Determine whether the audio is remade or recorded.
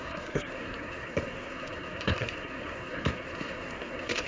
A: remade